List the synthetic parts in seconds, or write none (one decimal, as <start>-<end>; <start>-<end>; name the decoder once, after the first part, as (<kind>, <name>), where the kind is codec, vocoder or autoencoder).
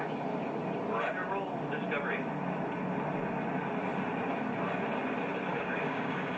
5.5-6.4 (codec, DAC)